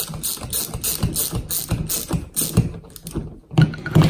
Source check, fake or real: real